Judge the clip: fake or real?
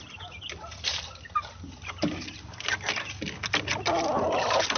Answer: real